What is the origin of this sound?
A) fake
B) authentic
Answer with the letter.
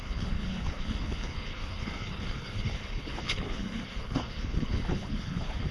A